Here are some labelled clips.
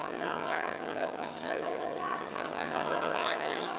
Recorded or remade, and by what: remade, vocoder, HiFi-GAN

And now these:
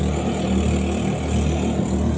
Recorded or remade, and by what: recorded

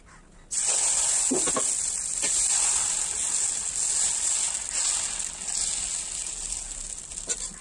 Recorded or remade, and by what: recorded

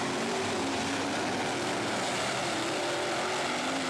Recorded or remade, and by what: recorded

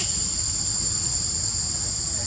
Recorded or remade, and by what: recorded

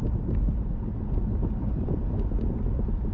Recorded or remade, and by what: recorded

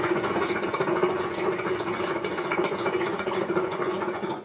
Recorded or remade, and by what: remade, vocoder, Vocos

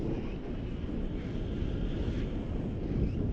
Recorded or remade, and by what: recorded